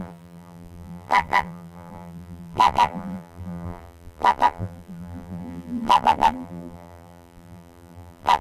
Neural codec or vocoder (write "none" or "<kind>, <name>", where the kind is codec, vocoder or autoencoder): vocoder, BigVGAN v2